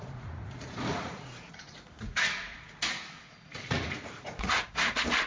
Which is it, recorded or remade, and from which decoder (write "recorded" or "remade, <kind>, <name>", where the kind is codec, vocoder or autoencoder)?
remade, vocoder, Vocos